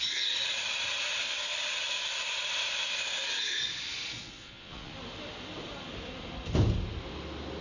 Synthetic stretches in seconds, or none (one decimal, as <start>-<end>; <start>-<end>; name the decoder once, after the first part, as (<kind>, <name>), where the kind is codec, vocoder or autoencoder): 4.2-4.9 (vocoder, Vocos)